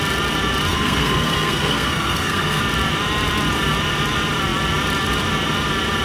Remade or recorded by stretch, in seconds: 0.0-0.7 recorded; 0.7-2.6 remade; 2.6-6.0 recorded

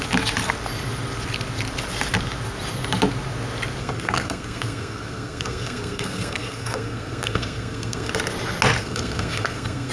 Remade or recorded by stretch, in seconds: 0.0-3.8 recorded; 3.8-8.1 remade; 8.1-8.8 recorded; 8.8-9.9 remade

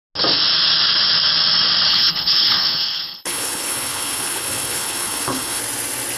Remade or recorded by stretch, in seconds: 0.0-1.9 recorded; 1.9-5.6 remade; 5.6-6.2 recorded

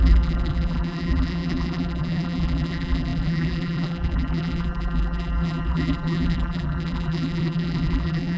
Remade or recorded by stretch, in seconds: 0.0-8.4 remade

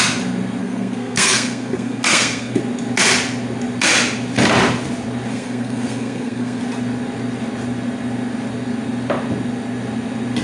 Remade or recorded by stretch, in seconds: 0.0-0.6 recorded; 0.6-2.6 remade; 2.6-5.3 recorded; 5.3-6.6 remade; 6.6-10.4 recorded

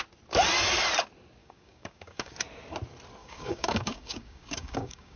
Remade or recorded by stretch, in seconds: 0.0-1.4 recorded; 1.4-2.3 remade; 2.3-3.2 recorded; 3.2-5.2 remade

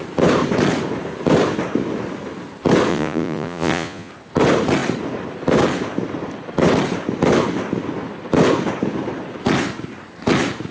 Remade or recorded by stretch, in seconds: 0.0-2.9 recorded; 2.9-4.1 remade; 4.1-10.7 recorded